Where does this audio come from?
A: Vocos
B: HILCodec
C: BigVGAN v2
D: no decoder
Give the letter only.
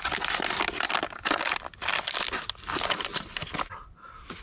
D